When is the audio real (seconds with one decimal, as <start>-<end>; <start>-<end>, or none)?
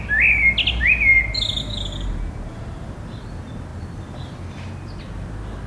0.0-5.7